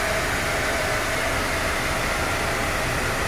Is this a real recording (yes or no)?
yes